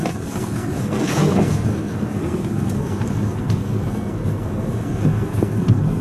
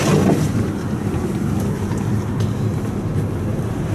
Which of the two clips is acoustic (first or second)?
second